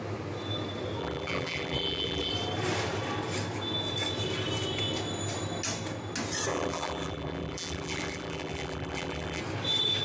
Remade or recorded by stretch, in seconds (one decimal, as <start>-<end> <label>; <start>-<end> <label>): 0.0-1.0 recorded; 1.0-2.3 remade; 2.3-6.5 recorded; 6.5-9.4 remade; 9.4-10.0 recorded